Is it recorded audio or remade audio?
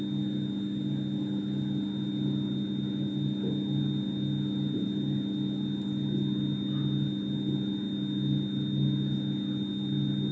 recorded